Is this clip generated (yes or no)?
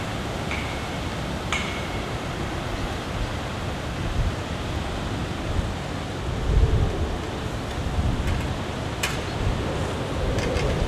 no